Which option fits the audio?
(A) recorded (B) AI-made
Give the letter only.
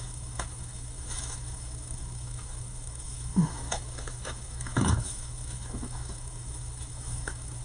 B